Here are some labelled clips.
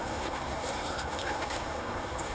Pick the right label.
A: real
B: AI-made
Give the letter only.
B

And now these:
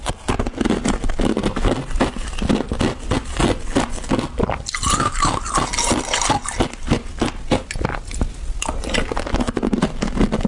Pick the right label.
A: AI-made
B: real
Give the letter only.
B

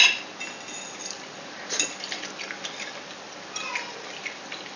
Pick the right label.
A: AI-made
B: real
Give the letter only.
B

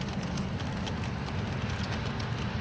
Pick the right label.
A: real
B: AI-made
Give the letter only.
A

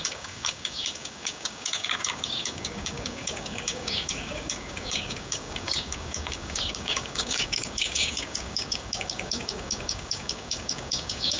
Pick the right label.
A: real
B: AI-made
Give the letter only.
B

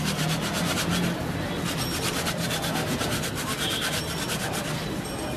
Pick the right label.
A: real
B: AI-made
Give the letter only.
A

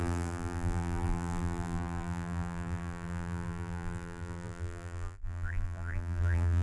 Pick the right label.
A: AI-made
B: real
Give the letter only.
A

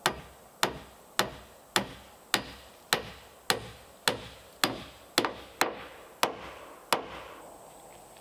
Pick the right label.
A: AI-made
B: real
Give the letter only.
B